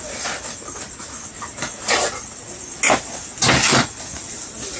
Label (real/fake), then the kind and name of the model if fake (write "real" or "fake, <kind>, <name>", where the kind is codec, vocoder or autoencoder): real